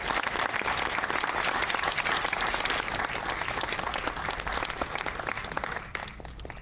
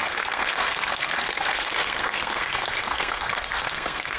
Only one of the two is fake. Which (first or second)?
second